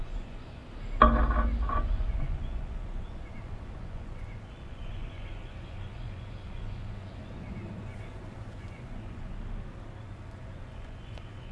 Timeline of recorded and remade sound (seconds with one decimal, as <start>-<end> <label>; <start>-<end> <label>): 0.0-0.6 remade; 0.6-1.7 recorded; 1.7-9.3 remade; 9.3-10.0 recorded; 10.0-11.5 remade

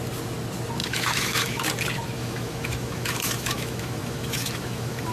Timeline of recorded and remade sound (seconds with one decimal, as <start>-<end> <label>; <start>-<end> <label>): 0.0-0.8 recorded; 0.8-1.7 remade; 1.7-2.2 recorded; 2.2-5.1 remade

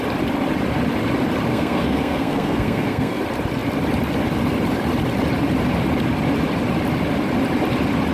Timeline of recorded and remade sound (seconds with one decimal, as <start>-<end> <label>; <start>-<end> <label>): 0.0-1.5 recorded; 1.5-3.2 remade; 3.2-8.1 recorded

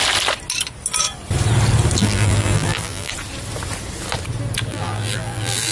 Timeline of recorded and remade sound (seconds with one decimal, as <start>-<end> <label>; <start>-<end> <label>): 0.0-2.0 recorded; 2.0-3.1 remade; 3.1-4.7 recorded; 4.7-5.7 remade

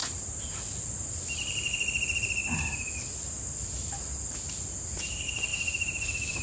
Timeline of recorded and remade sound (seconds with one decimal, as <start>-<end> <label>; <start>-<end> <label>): 0.0-0.6 remade; 0.6-5.5 recorded; 5.5-6.4 remade